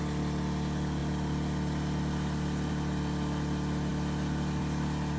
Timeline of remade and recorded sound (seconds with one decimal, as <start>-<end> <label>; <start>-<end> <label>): 0.0-5.2 recorded